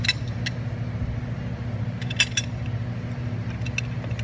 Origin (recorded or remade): recorded